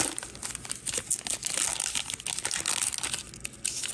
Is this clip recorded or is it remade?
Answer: recorded